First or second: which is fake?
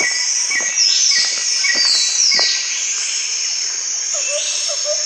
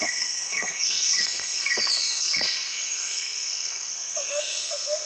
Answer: second